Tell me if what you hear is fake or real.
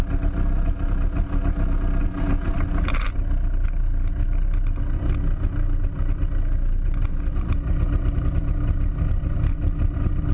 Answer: real